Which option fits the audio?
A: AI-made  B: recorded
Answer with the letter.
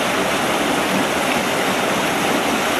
B